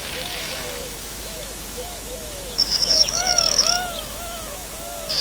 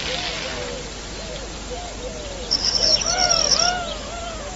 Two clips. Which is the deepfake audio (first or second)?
first